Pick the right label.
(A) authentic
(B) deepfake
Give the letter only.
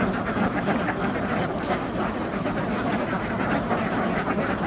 A